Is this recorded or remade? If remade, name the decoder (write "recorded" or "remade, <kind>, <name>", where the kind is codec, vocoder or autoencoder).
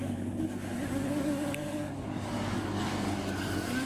remade, codec, DAC